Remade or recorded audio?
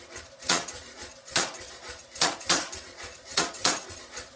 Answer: remade